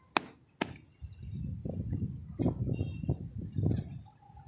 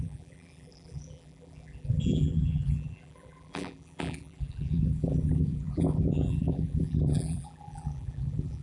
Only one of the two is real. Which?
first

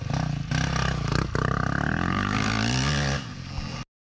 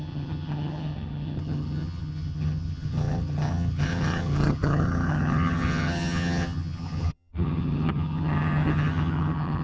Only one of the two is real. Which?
first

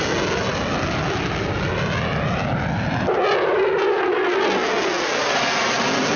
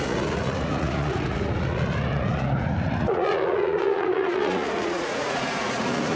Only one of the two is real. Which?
first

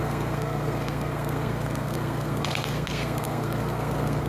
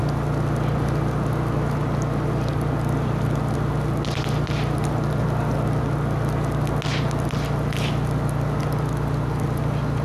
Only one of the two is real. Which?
second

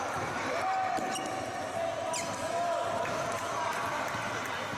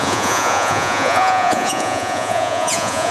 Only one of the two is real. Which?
first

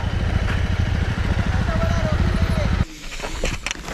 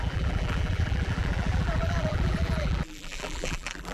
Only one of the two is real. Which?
first